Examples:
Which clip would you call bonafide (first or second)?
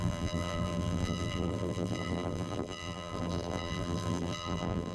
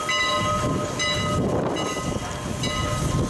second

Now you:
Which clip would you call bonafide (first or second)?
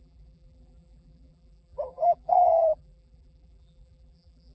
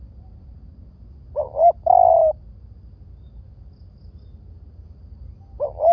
second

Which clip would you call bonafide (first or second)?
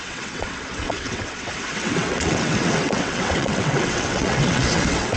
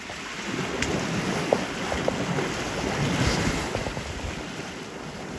second